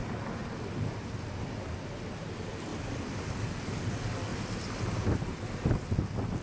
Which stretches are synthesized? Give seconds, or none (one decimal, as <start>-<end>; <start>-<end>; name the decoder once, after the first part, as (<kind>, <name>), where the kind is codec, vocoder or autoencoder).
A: 2.7-3.9 (vocoder, BigVGAN v2); 4.3-5.9